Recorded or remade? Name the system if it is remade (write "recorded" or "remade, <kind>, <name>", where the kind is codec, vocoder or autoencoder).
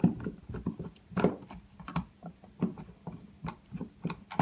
remade, vocoder, BigVGAN v2